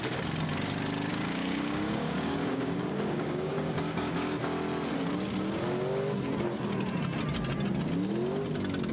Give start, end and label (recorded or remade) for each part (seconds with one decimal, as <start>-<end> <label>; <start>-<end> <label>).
0.0-1.1 recorded; 1.1-4.4 remade; 4.4-8.9 recorded